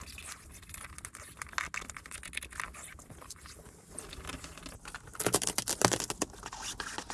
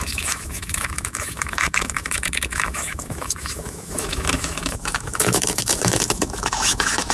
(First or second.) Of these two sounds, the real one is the first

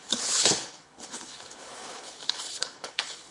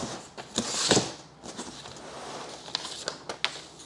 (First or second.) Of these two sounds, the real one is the second